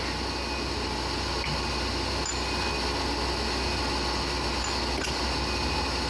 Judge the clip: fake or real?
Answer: real